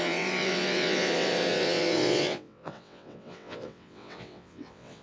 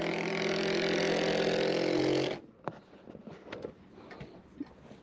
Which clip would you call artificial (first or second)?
first